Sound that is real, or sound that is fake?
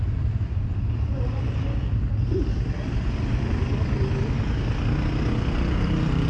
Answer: real